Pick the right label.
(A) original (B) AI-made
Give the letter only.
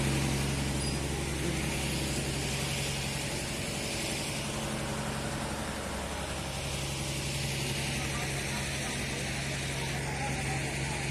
A